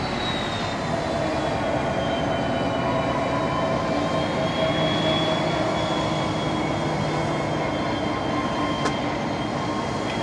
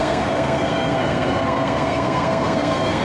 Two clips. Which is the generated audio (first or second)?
second